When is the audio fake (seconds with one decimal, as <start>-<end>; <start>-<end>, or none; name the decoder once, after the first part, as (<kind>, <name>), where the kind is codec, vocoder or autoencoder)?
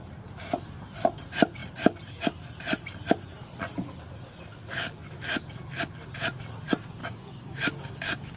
7.0-8.4 (codec, DAC)